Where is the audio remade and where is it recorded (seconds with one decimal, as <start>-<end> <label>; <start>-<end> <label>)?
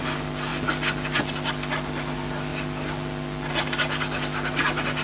0.0-5.0 recorded